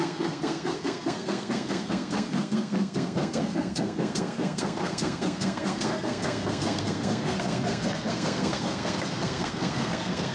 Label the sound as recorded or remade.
remade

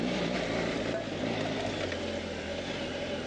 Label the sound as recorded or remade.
recorded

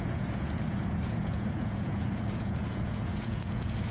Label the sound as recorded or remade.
remade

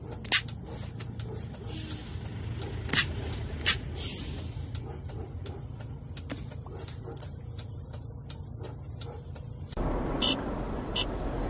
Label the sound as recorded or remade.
recorded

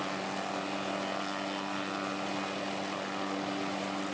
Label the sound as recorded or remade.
recorded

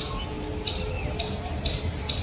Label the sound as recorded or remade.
recorded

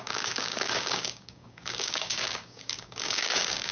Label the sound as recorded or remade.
remade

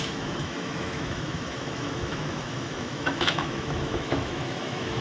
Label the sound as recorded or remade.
remade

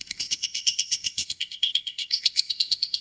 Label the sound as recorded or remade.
remade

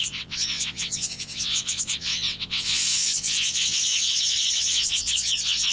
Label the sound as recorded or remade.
remade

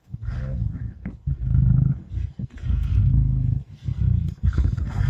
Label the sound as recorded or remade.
remade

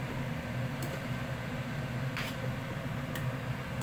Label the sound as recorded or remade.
recorded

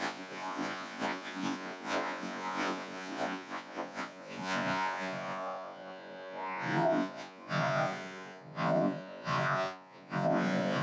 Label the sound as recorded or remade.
remade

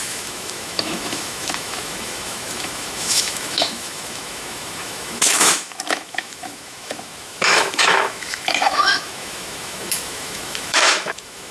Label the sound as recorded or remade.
remade